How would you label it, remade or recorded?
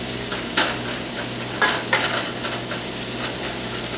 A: recorded